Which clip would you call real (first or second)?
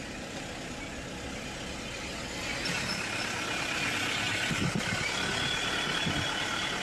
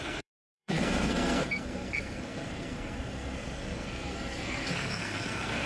first